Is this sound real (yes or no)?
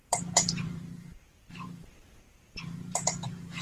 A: no